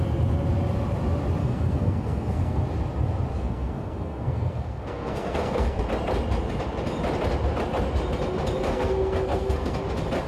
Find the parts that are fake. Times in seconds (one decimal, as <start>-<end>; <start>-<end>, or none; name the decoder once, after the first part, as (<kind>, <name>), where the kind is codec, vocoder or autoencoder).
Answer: 1.4-2.6 (codec, SNAC); 3.3-5.8; 8.6-9.8